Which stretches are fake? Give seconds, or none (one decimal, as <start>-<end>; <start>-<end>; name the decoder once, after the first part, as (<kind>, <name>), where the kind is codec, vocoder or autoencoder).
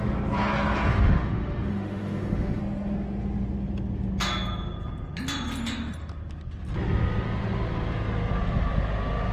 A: 0.9-2.6 (autoencoder, DAC-VAE)